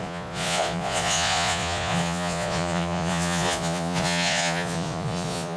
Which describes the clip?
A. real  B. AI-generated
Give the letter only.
B